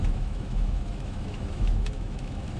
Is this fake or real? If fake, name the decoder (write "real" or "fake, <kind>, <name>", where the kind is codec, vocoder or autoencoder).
fake, autoencoder, DAC-VAE